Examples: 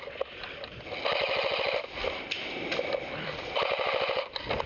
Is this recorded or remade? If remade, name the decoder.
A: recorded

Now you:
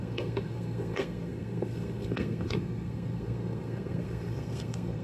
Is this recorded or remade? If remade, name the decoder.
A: remade, codec, SNAC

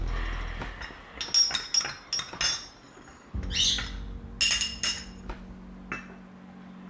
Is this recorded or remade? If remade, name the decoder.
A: recorded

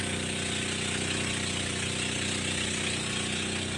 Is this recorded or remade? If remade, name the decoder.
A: recorded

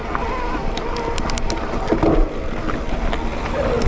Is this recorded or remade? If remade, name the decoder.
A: recorded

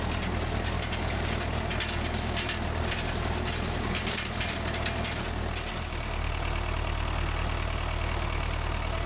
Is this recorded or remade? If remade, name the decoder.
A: recorded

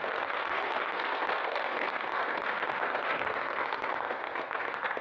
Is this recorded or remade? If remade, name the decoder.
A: remade, codec, SNAC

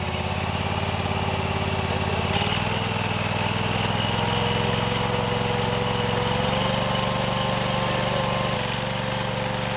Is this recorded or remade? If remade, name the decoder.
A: recorded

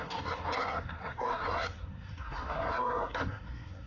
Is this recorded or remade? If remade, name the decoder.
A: remade, codec, SNAC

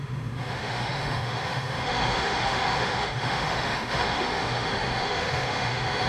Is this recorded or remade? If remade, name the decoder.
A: remade, autoencoder, DAC-VAE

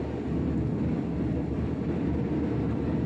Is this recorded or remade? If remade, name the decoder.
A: recorded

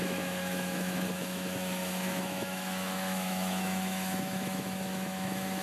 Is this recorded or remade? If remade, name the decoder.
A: remade, autoencoder, DAC-VAE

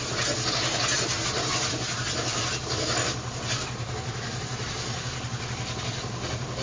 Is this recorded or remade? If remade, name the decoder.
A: recorded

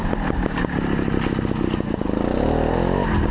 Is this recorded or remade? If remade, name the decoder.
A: recorded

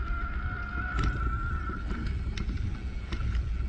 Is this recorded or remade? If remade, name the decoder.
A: recorded